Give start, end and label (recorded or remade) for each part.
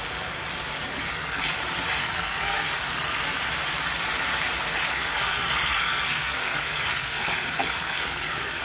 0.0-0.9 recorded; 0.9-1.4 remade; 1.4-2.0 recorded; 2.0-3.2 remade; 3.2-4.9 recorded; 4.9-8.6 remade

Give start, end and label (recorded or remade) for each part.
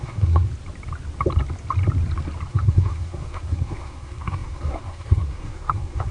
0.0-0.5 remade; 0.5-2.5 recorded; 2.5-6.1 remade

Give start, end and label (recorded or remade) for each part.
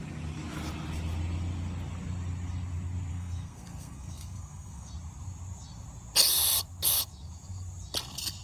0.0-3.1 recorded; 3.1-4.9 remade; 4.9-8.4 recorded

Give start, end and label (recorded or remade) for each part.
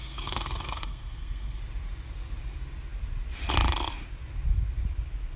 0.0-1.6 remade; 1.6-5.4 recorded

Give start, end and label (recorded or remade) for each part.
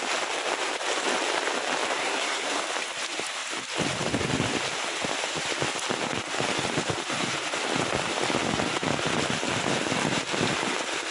0.0-2.0 recorded; 2.0-2.6 remade; 2.6-11.1 recorded